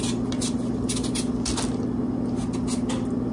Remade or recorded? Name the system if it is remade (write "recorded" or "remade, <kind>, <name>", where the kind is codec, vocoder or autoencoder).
recorded